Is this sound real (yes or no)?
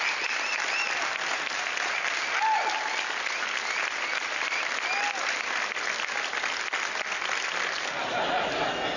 yes